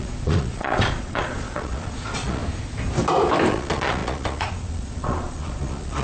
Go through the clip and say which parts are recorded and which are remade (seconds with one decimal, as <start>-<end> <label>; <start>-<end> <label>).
0.0-2.4 remade; 2.4-3.5 recorded; 3.5-6.0 remade